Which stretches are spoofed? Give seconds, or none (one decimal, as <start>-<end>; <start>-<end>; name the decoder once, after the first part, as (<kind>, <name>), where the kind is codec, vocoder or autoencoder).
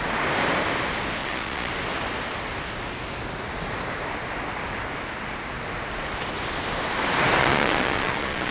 1.2-1.7 (vocoder, Vocos); 7.4-8.5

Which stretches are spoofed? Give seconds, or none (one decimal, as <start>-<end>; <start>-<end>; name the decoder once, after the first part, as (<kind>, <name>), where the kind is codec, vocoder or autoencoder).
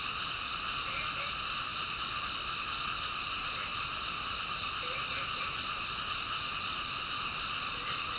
none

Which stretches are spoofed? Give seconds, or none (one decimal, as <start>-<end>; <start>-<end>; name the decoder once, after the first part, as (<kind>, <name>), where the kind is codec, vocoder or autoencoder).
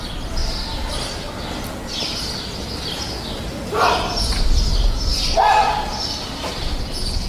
0.4-1.5 (vocoder, BigVGAN v2)